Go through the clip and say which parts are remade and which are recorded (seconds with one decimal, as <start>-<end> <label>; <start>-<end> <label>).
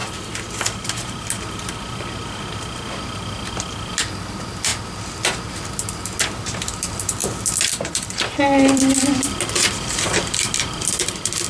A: 0.0-3.9 recorded; 3.9-4.7 remade; 4.7-6.6 recorded; 6.6-7.2 remade; 7.2-7.9 recorded; 7.9-8.9 remade; 8.9-9.8 recorded; 9.8-11.5 remade